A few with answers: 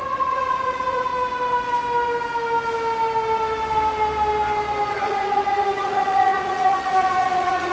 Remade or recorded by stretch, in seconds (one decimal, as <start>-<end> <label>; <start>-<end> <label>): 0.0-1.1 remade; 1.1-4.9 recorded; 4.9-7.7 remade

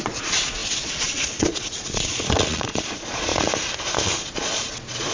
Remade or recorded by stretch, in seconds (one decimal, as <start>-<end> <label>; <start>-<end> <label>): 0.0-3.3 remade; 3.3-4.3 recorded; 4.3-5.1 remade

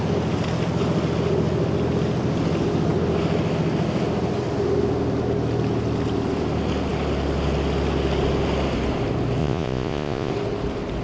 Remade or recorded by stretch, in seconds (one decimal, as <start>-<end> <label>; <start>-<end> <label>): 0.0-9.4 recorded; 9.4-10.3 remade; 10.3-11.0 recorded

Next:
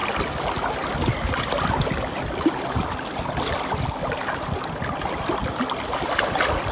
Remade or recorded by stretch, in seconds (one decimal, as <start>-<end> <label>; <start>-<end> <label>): 0.0-6.7 recorded

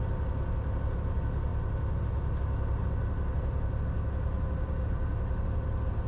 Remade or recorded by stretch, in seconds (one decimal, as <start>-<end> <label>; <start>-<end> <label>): 0.0-6.1 recorded